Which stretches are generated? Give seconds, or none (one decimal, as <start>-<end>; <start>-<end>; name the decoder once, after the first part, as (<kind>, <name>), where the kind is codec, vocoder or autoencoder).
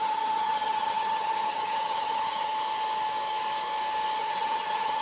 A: 0.0-2.5 (vocoder, HiFi-GAN); 4.2-5.0